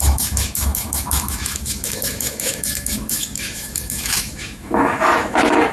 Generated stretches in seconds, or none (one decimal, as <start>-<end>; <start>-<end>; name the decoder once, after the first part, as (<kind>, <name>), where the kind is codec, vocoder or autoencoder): 0.0-5.7 (autoencoder, DAC-VAE)